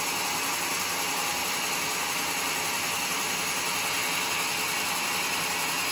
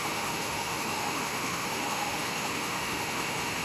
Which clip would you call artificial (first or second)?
second